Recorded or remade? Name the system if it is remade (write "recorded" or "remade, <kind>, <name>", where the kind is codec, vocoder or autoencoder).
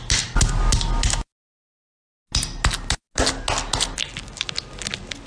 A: recorded